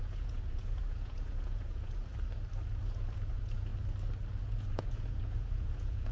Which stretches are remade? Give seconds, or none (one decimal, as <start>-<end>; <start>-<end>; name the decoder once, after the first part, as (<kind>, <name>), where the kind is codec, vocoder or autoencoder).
0.0-2.1 (vocoder, Vocos); 2.7-3.7; 4.4-6.1